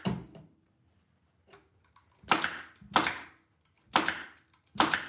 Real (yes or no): yes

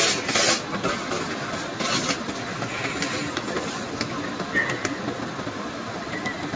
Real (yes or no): yes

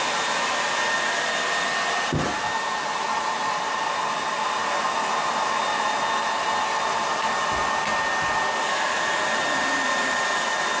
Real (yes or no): yes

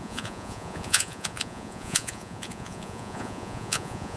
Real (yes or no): no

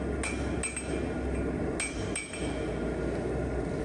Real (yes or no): yes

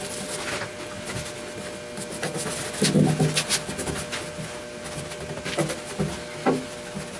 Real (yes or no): yes